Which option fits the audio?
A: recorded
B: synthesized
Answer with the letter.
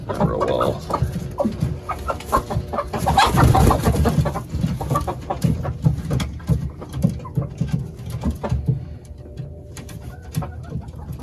A